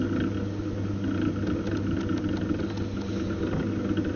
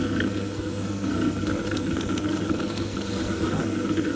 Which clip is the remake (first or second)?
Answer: second